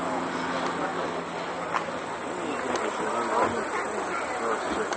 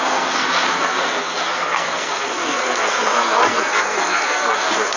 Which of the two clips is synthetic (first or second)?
second